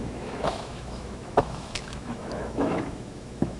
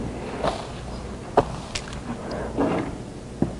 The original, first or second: second